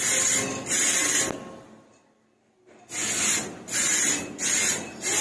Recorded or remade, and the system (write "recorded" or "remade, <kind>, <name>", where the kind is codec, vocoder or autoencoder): recorded